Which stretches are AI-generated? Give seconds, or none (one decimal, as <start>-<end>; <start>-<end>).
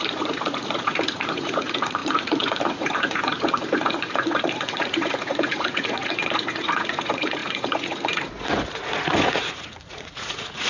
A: 0.0-10.7